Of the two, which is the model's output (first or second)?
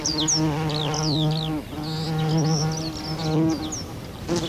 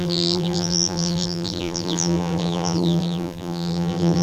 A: second